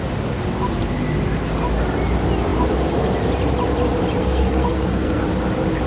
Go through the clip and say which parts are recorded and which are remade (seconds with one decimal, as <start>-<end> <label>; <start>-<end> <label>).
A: 0.0-4.2 recorded; 4.2-5.2 remade; 5.2-5.9 recorded